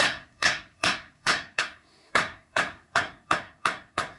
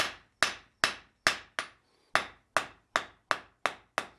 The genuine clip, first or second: second